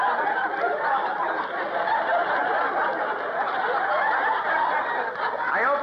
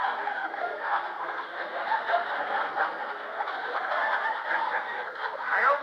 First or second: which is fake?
second